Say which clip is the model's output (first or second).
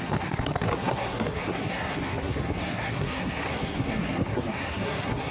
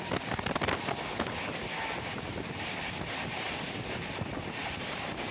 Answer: first